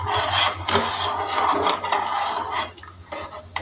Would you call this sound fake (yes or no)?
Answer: no